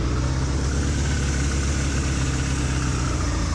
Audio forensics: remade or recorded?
recorded